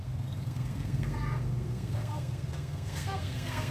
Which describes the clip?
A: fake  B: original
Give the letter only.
A